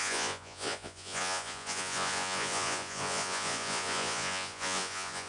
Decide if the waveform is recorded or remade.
remade